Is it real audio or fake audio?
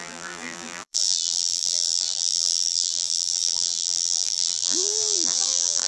fake